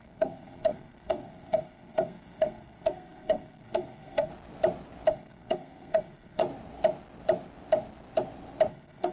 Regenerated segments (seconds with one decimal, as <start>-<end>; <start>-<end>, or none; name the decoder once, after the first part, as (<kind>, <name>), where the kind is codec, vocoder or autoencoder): 0.0-4.3 (codec, SNAC); 5.1-6.4; 8.7-9.1